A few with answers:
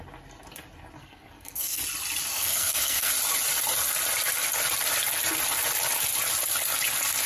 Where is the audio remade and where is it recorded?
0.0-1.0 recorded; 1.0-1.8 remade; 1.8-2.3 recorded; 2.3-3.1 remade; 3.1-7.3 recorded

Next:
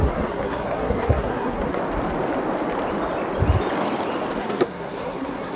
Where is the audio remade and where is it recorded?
0.0-1.8 remade; 1.8-4.4 recorded; 4.4-5.6 remade

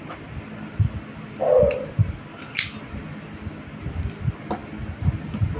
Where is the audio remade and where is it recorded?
0.0-5.6 recorded